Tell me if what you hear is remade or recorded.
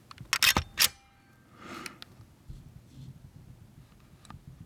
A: recorded